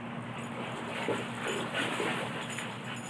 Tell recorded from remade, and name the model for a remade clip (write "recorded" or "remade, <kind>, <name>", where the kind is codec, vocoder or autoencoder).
recorded